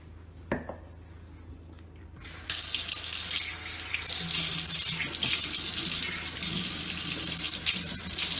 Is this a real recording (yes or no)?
yes